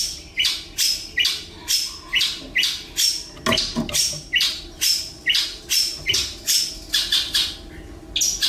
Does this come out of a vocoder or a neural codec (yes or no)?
no